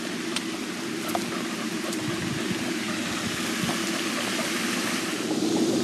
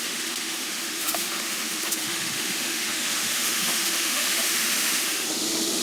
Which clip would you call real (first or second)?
first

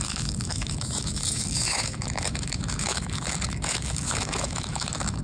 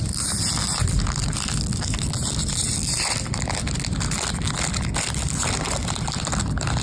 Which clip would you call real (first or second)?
second